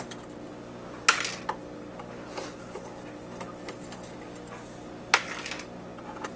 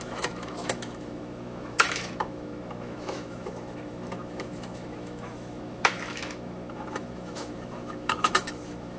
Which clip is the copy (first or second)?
second